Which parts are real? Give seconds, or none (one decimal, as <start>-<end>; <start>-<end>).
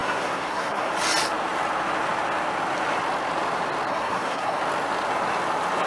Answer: 0.9-3.9; 4.6-5.9